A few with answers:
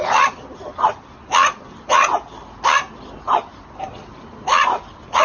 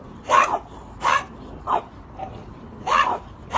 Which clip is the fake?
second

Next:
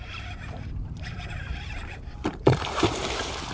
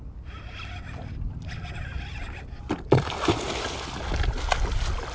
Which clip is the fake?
first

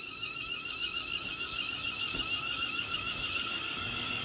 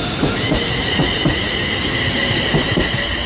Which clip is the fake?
first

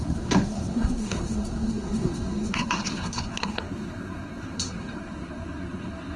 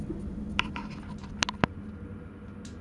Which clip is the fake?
first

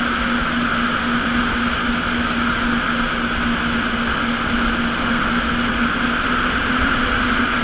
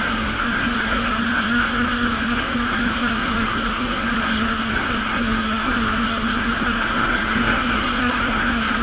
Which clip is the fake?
second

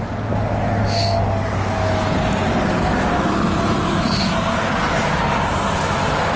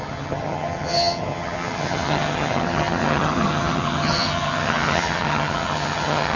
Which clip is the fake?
second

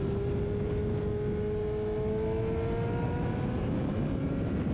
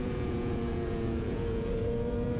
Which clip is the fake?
second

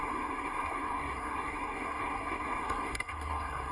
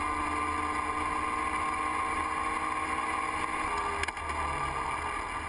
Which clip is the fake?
first